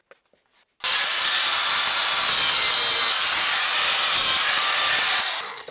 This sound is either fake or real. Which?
real